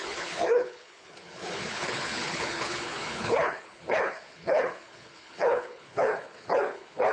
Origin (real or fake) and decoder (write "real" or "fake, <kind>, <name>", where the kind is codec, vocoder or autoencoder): fake, codec, HILCodec